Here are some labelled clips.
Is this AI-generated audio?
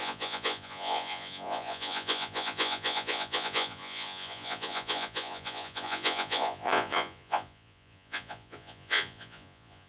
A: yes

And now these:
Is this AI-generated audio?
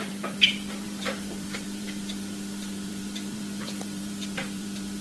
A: yes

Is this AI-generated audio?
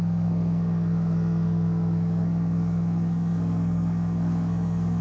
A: yes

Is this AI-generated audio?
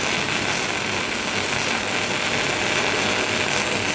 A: no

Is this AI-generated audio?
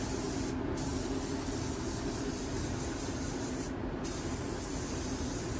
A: no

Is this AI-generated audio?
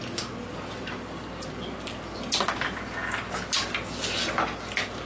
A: no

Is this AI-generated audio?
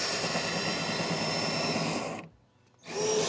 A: no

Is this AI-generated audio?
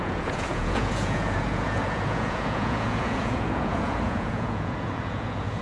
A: yes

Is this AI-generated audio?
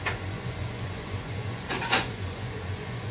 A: yes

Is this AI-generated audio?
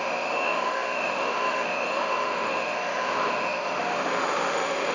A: yes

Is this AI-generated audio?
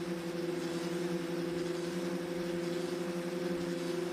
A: no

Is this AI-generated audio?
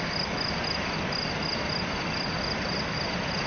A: no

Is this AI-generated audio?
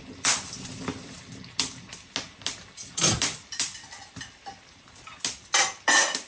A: no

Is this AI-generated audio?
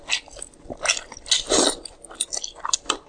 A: no